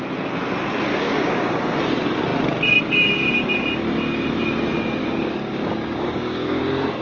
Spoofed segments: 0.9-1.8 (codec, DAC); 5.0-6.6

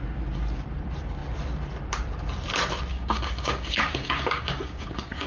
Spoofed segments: 2.9-5.3 (codec, DAC)